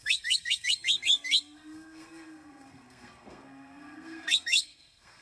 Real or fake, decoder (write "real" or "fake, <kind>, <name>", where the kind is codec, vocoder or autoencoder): fake, codec, SNAC